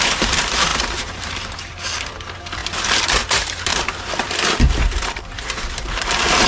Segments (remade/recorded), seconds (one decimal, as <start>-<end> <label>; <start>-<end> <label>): 0.0-2.6 remade; 2.6-3.1 recorded; 3.1-3.7 remade; 3.7-4.9 recorded; 4.9-6.5 remade